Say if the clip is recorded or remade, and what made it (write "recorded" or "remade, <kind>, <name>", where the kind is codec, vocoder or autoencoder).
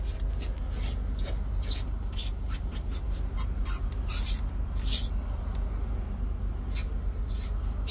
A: recorded